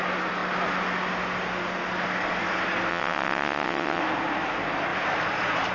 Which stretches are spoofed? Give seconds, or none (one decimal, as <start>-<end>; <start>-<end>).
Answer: 2.9-4.0